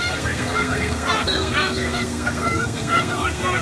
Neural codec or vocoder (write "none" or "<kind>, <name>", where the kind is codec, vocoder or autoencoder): codec, SNAC